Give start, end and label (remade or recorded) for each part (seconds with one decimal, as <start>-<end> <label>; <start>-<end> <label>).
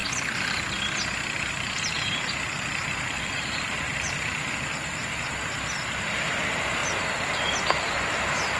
0.0-1.5 recorded; 1.5-4.7 remade; 4.7-6.1 recorded; 6.1-6.8 remade; 6.8-7.8 recorded; 7.8-8.6 remade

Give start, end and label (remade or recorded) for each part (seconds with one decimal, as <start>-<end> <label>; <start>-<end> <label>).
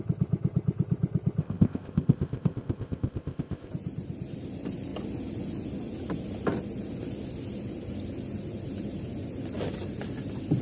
0.0-1.4 recorded; 1.4-3.7 remade; 3.7-10.6 recorded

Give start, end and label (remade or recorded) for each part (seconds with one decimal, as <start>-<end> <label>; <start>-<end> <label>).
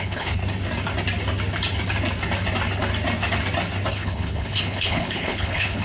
0.0-0.4 remade; 0.4-3.9 recorded; 3.9-5.8 remade